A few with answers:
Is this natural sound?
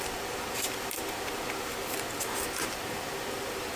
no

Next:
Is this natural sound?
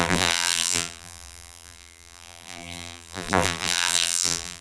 no